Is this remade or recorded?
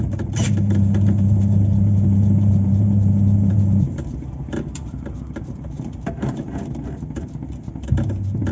remade